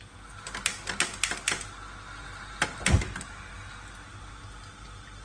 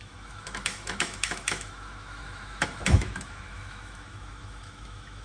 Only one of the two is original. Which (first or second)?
first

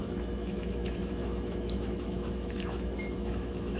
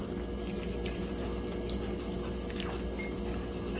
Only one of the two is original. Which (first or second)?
second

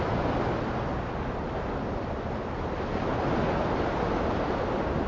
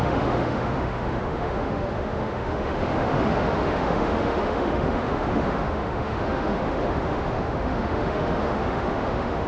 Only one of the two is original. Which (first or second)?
first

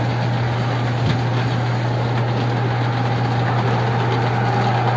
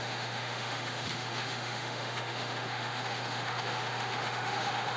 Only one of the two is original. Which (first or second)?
first